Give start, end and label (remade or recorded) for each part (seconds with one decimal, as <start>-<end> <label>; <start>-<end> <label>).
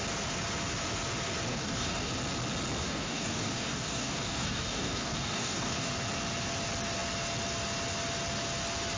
0.0-1.5 recorded; 1.5-2.1 remade; 2.1-2.8 recorded; 2.8-5.9 remade; 5.9-9.0 recorded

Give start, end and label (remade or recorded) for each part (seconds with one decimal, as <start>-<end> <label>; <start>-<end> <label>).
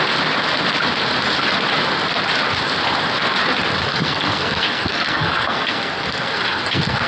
0.0-3.8 recorded; 3.8-7.1 remade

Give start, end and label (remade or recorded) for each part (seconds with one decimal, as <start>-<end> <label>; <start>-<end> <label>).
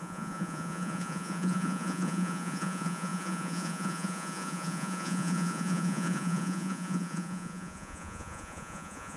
0.0-9.2 remade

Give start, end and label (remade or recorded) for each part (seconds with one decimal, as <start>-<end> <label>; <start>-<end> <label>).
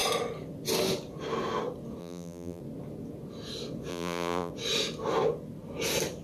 0.0-2.0 recorded; 2.0-2.6 remade; 2.6-3.9 recorded; 3.9-4.5 remade; 4.5-6.2 recorded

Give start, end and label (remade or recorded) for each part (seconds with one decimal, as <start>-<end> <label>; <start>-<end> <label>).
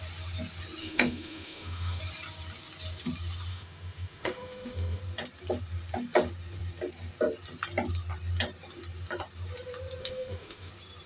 0.0-0.8 recorded; 0.8-2.0 remade; 2.0-3.5 recorded; 3.5-5.0 remade; 5.0-10.0 recorded; 10.0-10.7 remade; 10.7-11.1 recorded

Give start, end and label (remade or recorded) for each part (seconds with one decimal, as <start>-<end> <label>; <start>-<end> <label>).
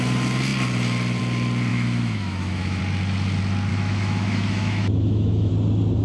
0.0-1.7 recorded; 1.7-2.8 remade; 2.8-3.7 recorded; 3.7-5.5 remade; 5.5-6.0 recorded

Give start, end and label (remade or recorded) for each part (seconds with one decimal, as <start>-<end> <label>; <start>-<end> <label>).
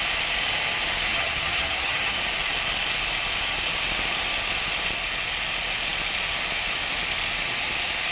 0.0-1.1 recorded; 1.1-2.2 remade; 2.2-8.1 recorded